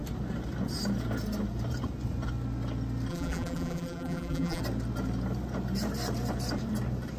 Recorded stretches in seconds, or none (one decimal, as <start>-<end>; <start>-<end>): 0.0-3.1; 4.6-7.2